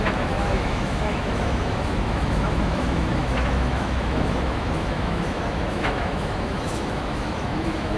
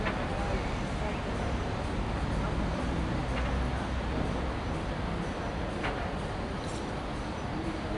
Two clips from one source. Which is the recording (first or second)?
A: second